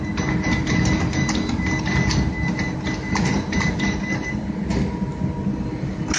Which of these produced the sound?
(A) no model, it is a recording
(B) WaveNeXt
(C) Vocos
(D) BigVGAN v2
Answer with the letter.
A